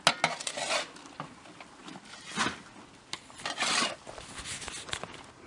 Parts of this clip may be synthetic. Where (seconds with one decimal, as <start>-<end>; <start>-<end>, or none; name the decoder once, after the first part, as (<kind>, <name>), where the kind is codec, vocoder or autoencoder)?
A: none